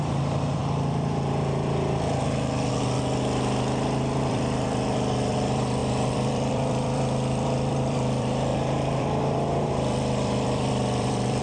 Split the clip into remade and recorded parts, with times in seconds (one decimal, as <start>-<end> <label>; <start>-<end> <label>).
0.0-0.6 remade; 0.6-4.2 recorded; 4.2-11.4 remade